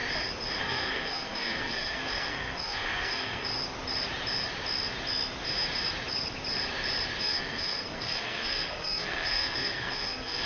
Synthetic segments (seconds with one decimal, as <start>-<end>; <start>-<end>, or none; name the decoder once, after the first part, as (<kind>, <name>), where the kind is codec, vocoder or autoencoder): 0.6-3.5 (codec, SNAC); 7.2-10.5